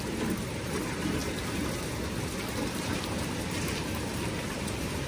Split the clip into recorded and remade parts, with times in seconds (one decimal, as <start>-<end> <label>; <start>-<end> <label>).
0.0-1.2 remade; 1.2-2.8 recorded; 2.8-5.1 remade